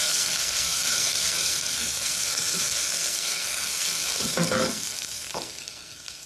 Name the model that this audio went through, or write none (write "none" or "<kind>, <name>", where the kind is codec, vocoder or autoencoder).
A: codec, SNAC